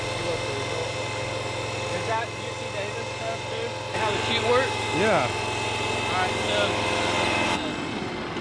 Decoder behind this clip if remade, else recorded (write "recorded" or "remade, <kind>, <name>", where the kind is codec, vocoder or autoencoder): recorded